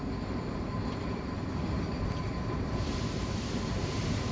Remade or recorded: recorded